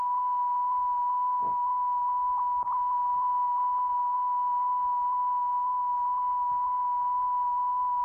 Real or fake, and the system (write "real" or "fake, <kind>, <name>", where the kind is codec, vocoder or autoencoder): real